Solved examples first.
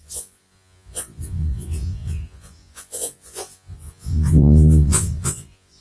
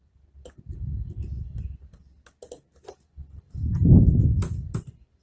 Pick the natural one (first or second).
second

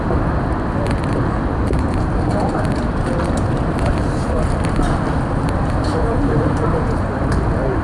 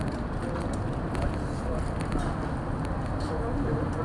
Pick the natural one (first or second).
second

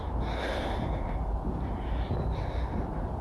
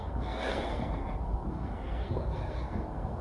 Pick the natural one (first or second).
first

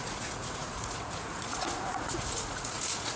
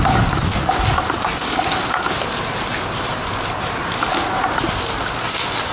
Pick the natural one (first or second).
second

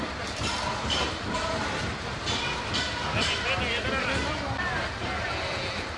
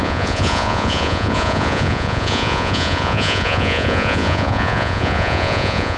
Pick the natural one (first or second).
first